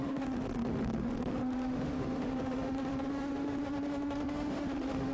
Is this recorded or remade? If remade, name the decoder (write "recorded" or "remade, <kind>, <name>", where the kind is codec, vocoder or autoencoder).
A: remade, autoencoder, DAC-VAE